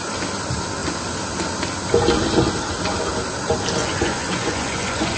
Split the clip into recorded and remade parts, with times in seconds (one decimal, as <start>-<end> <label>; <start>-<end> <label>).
0.0-3.8 recorded; 3.8-5.2 remade